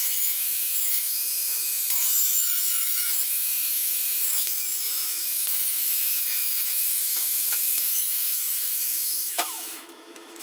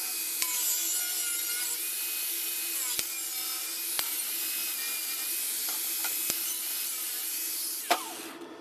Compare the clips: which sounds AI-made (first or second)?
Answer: first